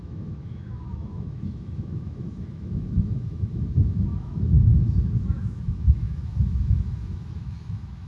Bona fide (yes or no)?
no